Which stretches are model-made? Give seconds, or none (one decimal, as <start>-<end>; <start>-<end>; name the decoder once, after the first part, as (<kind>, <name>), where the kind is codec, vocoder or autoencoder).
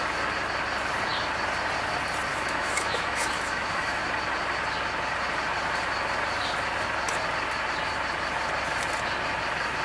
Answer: 2.3-4.0 (autoencoder, DAC-VAE)